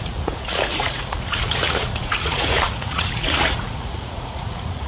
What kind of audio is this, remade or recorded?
remade